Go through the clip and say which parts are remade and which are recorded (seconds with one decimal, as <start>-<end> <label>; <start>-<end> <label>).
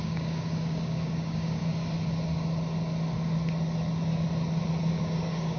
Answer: 0.0-1.6 remade; 1.6-5.0 recorded; 5.0-5.6 remade